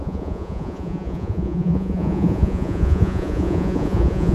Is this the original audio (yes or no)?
no